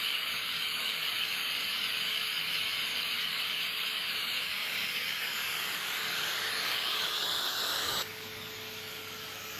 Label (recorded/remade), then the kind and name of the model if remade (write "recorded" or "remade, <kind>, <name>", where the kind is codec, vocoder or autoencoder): remade, codec, DAC